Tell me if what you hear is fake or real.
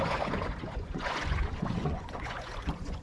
fake